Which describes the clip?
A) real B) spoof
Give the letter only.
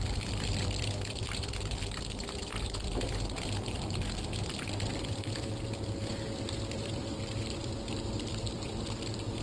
B